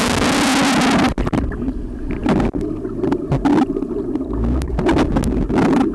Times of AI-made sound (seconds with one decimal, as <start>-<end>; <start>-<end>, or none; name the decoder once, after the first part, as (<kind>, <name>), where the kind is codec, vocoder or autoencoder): none